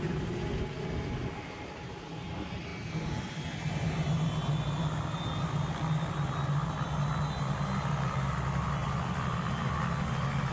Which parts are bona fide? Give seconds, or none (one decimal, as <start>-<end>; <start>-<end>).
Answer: 0.0-1.2; 1.9-8.8; 10.1-10.5